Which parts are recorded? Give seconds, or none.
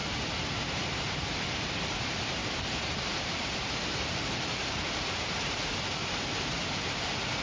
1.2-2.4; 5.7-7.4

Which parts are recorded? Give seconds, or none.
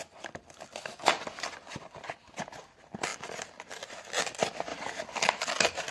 0.0-3.1; 3.9-4.7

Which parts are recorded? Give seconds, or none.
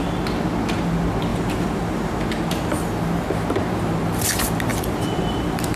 0.0-1.3; 2.2-4.7